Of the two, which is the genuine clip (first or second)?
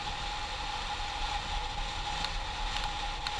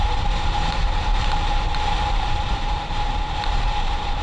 first